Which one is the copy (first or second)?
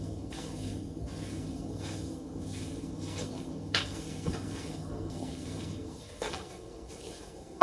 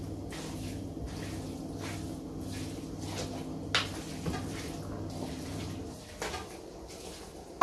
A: first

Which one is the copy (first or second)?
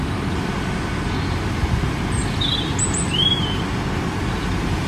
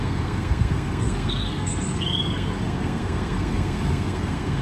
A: second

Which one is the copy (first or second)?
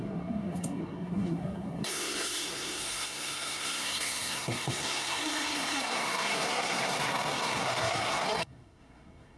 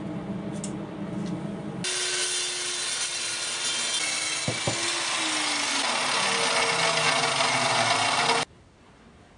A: first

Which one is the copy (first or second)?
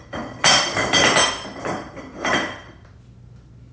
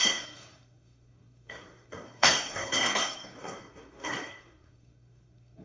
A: second